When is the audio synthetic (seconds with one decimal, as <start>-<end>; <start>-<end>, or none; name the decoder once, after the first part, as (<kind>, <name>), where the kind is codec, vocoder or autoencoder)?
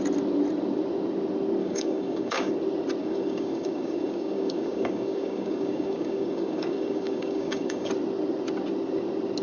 1.6-2.5 (codec, DAC); 3.0-7.9